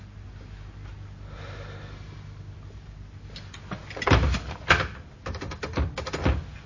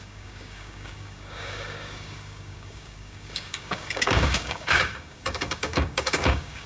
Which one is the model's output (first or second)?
second